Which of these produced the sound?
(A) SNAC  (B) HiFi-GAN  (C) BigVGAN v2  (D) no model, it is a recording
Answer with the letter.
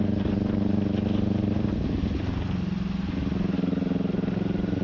D